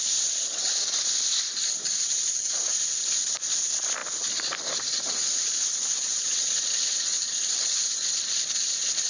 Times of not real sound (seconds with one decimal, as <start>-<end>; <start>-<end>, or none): none